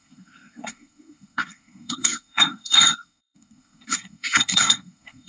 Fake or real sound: fake